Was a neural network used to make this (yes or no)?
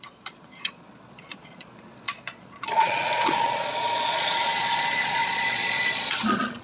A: yes